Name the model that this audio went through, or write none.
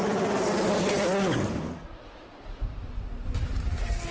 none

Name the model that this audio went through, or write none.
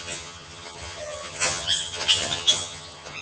vocoder, HiFi-GAN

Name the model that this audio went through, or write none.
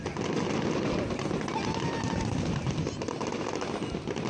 none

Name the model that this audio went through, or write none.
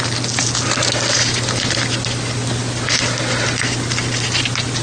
none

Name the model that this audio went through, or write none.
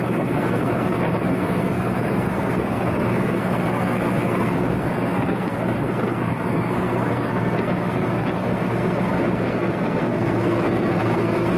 codec, SNAC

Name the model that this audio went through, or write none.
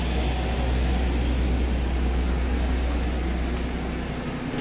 none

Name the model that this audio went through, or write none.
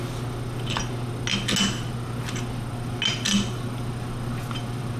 none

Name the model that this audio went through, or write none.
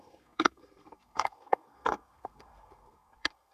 codec, SNAC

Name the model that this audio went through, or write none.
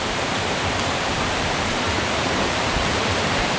vocoder, BigVGAN v2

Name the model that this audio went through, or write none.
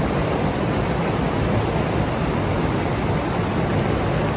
none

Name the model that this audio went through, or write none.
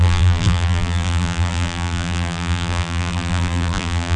vocoder, BigVGAN v2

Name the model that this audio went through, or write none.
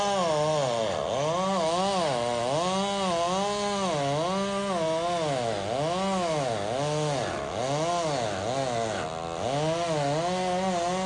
none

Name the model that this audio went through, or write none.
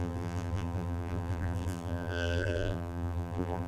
vocoder, BigVGAN v2